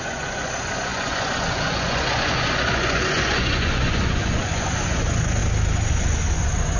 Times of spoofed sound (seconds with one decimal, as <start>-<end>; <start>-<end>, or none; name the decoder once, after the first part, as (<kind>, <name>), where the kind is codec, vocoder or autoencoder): 0.0-5.4 (vocoder, Vocos); 5.9-6.8